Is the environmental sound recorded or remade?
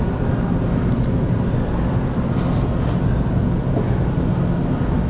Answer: recorded